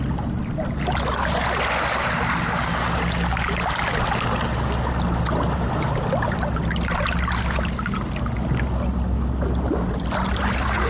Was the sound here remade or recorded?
recorded